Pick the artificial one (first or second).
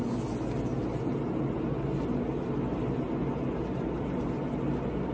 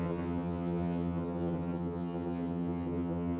second